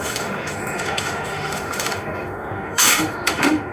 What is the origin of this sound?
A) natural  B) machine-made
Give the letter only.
B